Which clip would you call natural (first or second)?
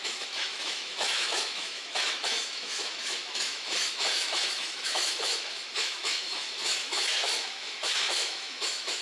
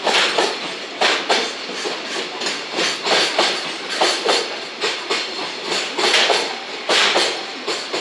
second